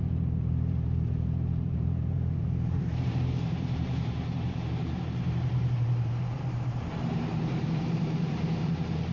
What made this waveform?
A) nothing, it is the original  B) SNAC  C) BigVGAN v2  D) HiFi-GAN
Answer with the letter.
C